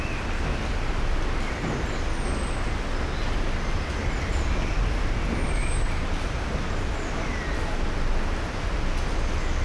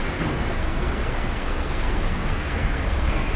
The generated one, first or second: second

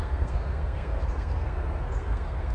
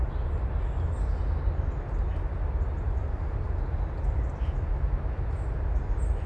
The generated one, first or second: first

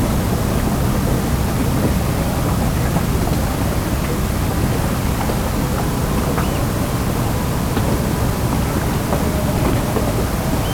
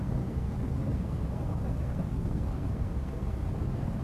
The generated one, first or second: second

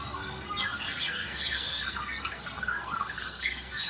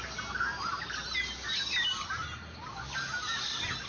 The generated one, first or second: first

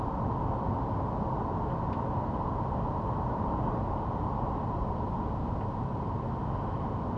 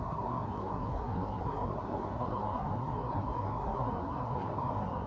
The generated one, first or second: second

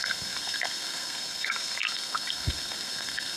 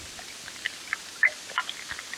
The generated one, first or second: first